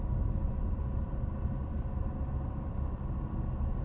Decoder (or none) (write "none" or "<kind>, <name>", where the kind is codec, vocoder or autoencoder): none